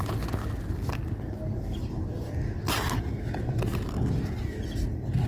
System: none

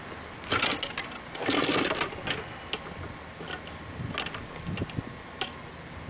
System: none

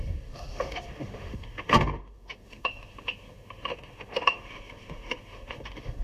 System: autoencoder, DAC-VAE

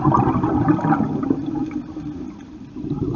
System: none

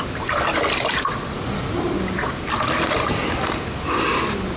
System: none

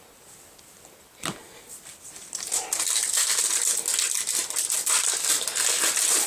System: none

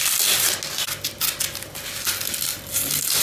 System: none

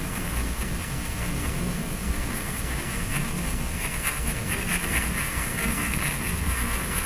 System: codec, SNAC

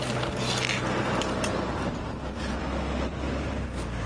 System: none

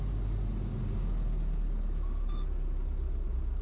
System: none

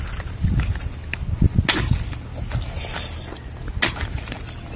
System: none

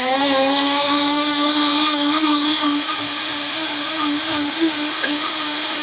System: autoencoder, DAC-VAE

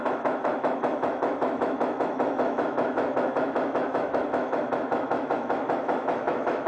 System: autoencoder, DAC-VAE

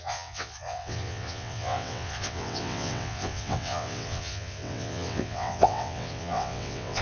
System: vocoder, WaveNeXt